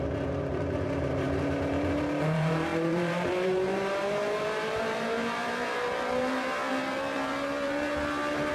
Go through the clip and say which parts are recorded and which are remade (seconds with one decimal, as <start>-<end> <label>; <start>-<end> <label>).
0.0-8.5 remade